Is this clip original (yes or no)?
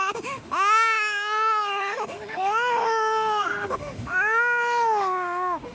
no